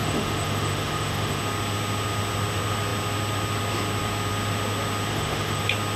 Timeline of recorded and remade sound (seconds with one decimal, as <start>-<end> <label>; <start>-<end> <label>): 0.0-1.4 remade; 1.4-5.1 recorded; 5.1-5.6 remade; 5.6-6.0 recorded